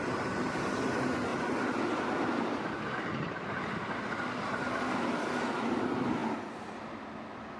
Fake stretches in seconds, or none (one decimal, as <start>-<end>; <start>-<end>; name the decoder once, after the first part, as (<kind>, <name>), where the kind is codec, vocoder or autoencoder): none

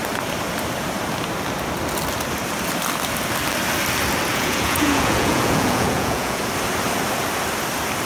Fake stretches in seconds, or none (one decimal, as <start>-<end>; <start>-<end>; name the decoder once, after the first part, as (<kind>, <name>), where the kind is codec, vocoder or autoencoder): 4.3-6.4 (vocoder, Vocos)

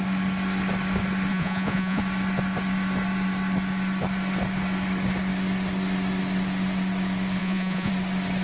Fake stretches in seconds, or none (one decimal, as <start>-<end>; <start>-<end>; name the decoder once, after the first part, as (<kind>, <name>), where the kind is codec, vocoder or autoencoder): 1.3-2.0 (vocoder, Vocos); 7.4-7.9

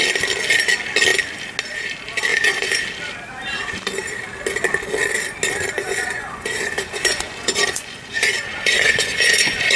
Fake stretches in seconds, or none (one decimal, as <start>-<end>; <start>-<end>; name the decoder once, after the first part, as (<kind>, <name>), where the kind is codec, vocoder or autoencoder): 2.3-2.8 (vocoder, Vocos); 5.8-9.8

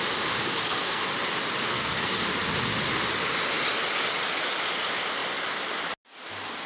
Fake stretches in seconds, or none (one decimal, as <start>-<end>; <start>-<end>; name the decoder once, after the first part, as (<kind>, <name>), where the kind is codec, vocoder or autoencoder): 0.4-1.0 (codec, SNAC); 1.7-2.2

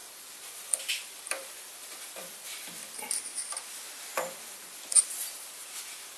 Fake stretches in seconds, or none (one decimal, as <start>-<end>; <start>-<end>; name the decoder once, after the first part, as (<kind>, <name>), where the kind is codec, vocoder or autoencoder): 0.0-2.7 (vocoder, BigVGAN v2); 4.1-4.8

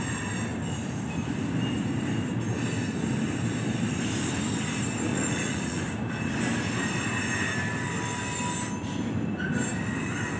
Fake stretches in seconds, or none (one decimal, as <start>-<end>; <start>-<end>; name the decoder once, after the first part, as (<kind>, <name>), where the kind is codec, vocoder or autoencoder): 5.1-5.8 (vocoder, Vocos)